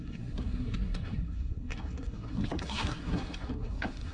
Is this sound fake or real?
fake